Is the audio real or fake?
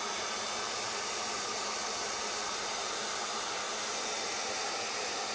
fake